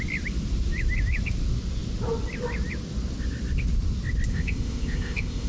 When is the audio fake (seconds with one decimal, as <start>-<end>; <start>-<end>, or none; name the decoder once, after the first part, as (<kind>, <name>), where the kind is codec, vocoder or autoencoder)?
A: 4.3-5.5 (codec, ZipCodec)